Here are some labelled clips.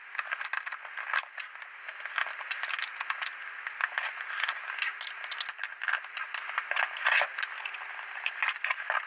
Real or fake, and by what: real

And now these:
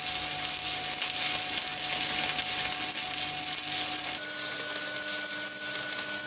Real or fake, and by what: real